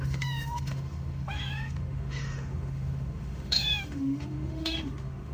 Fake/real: fake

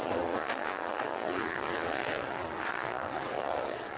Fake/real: fake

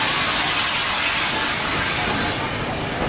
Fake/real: real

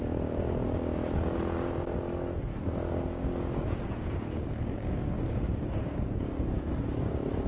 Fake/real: fake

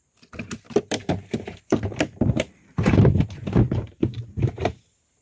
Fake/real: fake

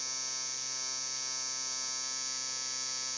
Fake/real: real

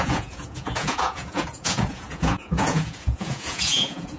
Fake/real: fake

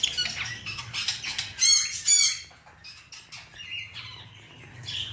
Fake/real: real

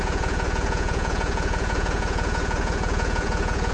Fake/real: fake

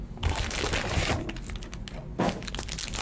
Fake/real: real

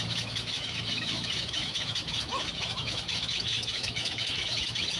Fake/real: fake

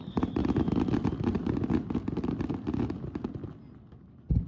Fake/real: real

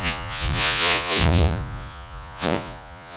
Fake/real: fake